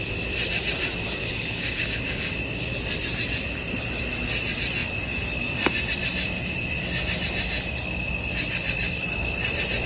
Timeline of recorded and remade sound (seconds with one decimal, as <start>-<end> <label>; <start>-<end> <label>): 0.0-1.2 recorded; 1.2-2.3 remade; 2.3-9.9 recorded